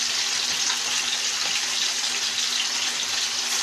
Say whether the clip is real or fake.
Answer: real